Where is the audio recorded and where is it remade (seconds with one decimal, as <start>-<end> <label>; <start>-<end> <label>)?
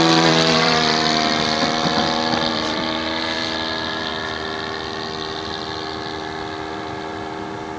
0.0-2.0 remade; 2.0-2.5 recorded; 2.5-4.1 remade; 4.1-7.8 recorded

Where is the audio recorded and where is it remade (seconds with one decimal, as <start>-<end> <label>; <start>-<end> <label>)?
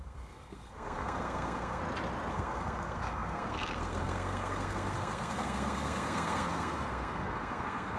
0.0-1.8 remade; 1.8-2.3 recorded; 2.3-8.0 remade